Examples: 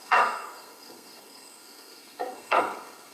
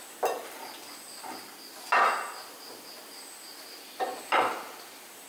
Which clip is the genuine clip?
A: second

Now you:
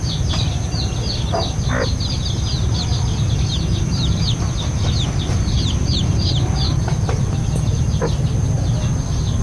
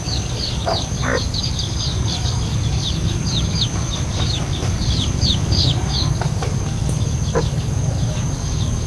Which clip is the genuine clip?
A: first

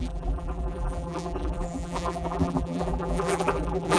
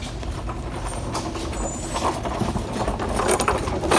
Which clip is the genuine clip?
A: second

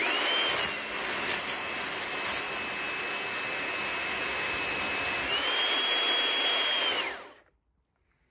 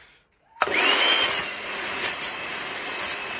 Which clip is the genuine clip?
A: first